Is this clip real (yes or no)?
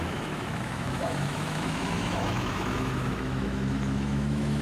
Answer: no